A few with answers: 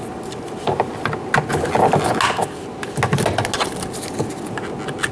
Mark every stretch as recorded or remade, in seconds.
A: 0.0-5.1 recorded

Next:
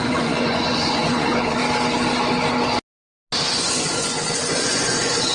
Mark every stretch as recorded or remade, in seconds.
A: 0.0-1.6 remade; 1.6-3.4 recorded; 3.4-5.3 remade

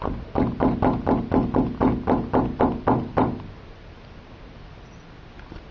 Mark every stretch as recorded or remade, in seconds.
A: 0.0-5.7 recorded